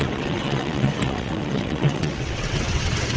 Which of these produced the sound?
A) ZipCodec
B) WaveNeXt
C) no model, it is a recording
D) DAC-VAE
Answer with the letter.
B